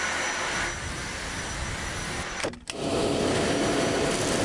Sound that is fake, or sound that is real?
real